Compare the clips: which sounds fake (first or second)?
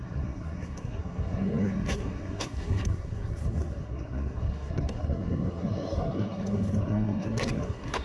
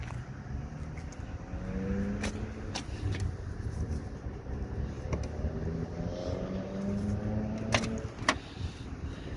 first